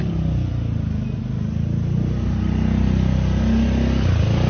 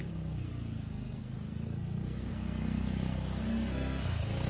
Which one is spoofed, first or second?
second